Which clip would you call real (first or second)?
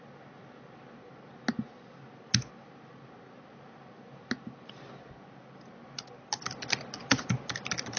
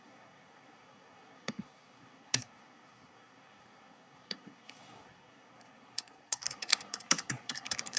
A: first